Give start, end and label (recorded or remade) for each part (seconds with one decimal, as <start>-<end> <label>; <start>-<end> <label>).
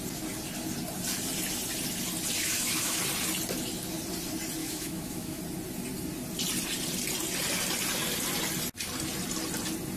0.0-2.4 recorded; 2.4-3.0 remade; 3.0-4.6 recorded; 4.6-5.4 remade; 5.4-10.0 recorded